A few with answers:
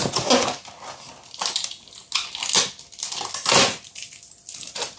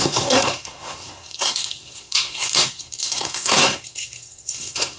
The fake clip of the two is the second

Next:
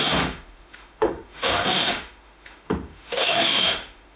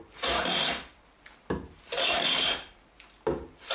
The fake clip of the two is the first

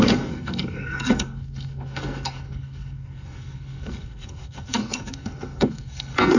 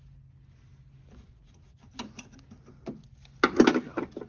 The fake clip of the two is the first